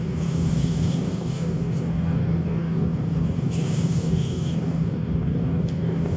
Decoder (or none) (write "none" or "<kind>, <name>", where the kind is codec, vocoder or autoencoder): codec, DAC